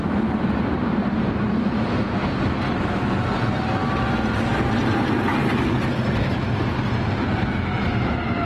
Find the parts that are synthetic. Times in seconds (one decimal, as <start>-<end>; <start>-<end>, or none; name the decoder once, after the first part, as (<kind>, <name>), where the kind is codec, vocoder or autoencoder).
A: none